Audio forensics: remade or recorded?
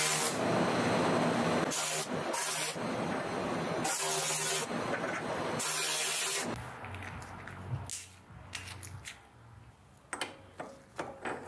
recorded